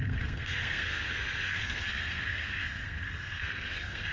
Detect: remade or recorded remade